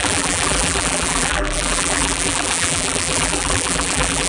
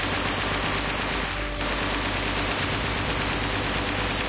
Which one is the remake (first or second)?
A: first